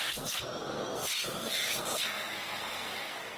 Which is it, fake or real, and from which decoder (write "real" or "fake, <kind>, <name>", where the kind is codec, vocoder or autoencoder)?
fake, codec, SNAC